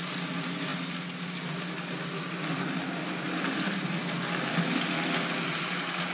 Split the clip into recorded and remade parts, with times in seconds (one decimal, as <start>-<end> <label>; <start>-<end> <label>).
0.0-6.1 recorded